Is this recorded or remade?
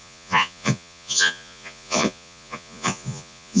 remade